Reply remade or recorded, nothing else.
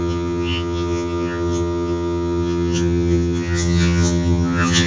remade